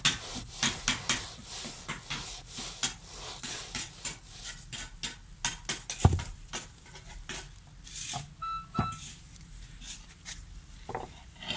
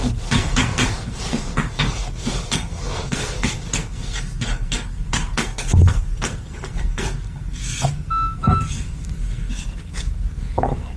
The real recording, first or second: first